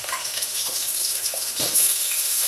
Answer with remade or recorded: remade